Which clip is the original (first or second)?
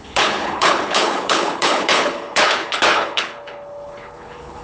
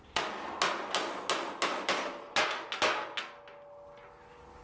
second